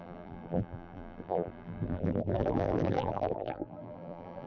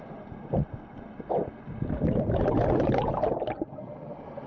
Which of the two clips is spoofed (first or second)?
first